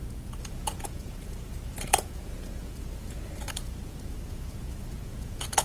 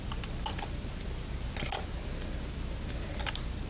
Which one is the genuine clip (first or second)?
second